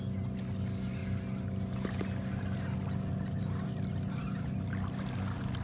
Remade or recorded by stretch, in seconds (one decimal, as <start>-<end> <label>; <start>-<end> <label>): 0.0-5.6 recorded